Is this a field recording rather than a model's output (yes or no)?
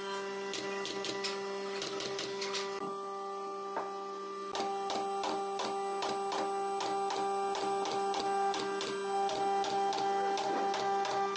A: yes